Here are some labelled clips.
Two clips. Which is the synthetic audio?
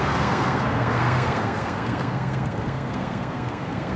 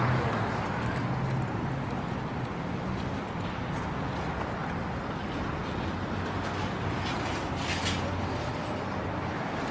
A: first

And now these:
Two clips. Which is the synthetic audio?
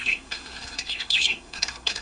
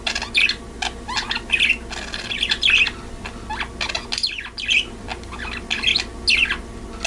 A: first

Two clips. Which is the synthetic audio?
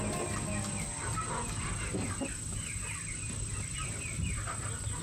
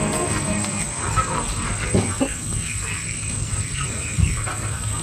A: second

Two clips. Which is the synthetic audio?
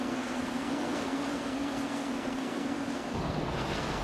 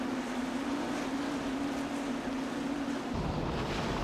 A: first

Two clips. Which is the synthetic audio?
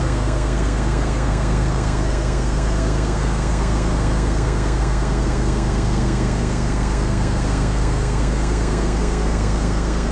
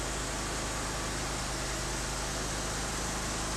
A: first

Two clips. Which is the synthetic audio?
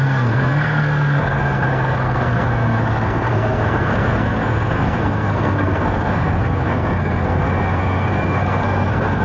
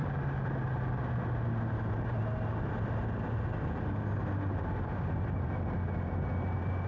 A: first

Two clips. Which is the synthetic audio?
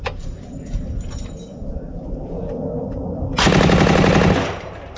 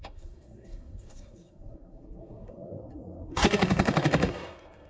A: second